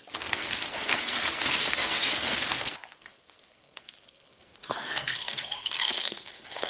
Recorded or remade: remade